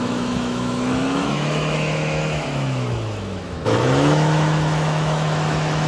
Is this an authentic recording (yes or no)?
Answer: no